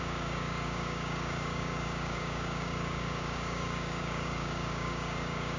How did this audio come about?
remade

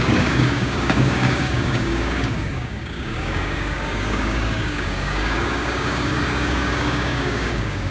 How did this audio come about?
remade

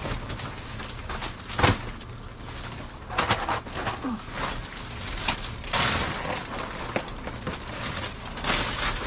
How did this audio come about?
recorded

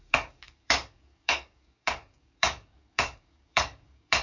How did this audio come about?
remade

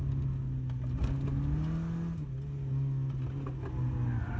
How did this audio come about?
recorded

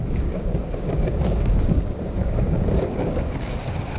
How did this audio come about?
remade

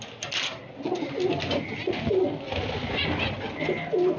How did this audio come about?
recorded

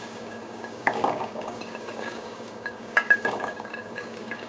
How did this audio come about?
remade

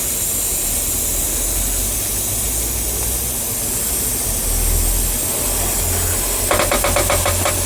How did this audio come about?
recorded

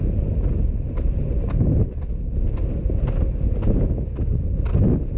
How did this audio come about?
recorded